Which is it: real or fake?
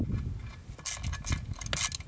real